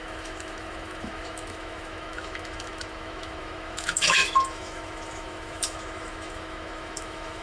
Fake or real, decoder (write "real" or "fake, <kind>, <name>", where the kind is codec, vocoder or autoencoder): fake, autoencoder, DAC-VAE